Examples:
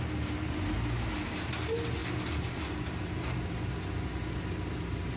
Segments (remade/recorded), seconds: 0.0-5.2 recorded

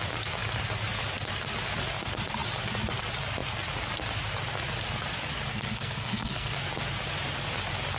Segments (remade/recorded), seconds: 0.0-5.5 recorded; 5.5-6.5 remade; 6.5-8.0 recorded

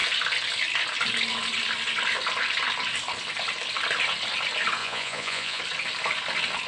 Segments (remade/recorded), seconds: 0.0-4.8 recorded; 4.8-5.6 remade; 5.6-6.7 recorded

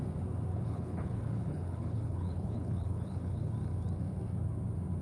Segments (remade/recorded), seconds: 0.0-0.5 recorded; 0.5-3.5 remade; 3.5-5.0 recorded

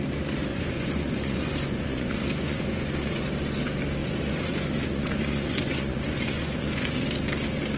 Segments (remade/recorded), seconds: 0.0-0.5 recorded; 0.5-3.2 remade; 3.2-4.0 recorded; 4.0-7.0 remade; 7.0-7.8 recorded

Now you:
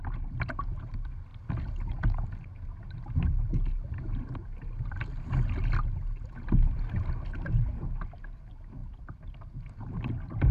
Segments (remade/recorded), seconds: 0.0-4.4 recorded; 4.4-5.1 remade; 5.1-8.8 recorded; 8.8-9.3 remade; 9.3-10.5 recorded

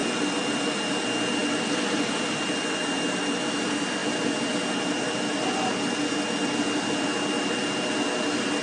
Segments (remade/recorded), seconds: 0.0-1.4 recorded; 1.4-3.2 remade; 3.2-8.6 recorded

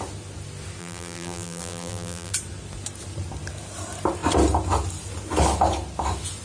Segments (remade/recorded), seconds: 0.0-0.8 recorded; 0.8-2.3 remade; 2.3-6.4 recorded